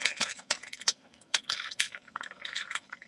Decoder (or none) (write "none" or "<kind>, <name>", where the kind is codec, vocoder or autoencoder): codec, SNAC